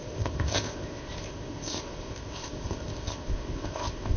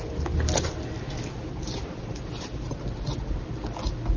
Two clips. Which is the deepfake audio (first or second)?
first